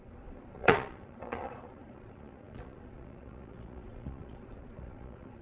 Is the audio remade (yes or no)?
yes